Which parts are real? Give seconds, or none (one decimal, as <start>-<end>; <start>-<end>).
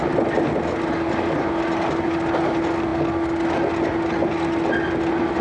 0.0-5.4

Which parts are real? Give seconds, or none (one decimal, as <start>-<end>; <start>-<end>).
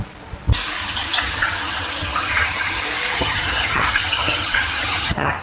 0.0-0.8; 2.8-3.2